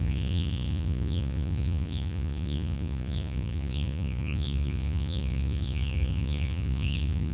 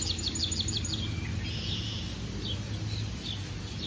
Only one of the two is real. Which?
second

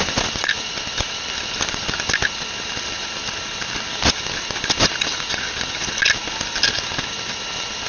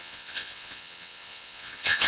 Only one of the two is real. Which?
first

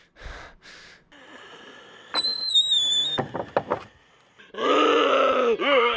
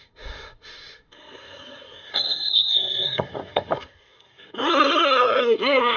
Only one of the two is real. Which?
first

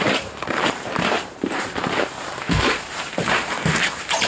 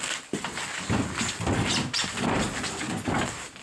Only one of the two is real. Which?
second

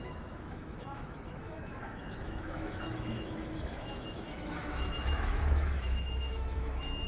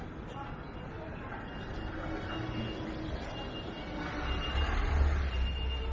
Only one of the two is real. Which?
second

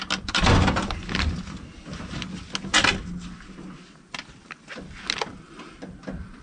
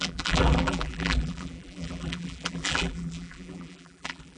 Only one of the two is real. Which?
first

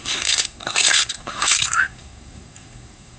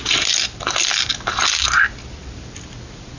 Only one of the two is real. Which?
second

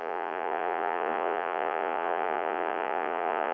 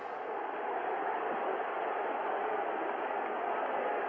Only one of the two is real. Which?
second